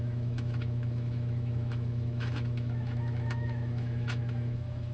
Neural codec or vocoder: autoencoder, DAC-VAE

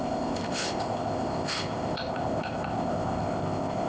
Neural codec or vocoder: codec, ZipCodec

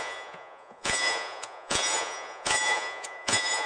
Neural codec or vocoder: vocoder, Vocos